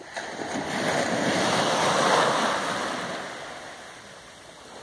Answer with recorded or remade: recorded